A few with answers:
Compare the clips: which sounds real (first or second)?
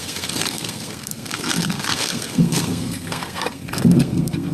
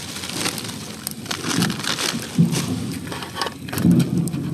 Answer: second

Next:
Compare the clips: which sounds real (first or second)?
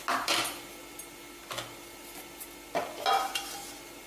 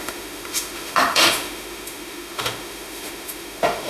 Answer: first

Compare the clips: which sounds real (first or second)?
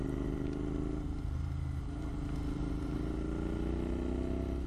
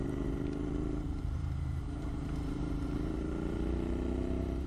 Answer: first